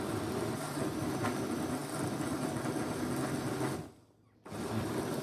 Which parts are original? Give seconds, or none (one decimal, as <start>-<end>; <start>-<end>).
1.8-3.9